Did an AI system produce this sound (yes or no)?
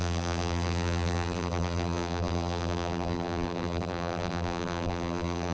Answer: yes